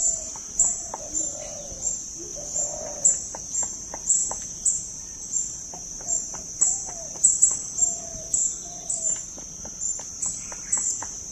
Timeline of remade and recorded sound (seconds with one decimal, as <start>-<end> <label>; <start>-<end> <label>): 0.0-2.3 remade; 2.3-3.1 recorded; 3.1-8.4 remade; 8.4-10.0 recorded; 10.0-11.3 remade